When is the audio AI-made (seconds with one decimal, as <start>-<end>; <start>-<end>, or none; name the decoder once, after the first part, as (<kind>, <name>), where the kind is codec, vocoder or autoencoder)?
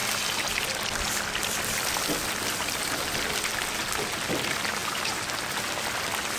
none